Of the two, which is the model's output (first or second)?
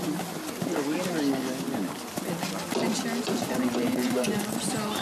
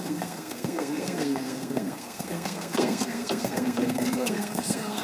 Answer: second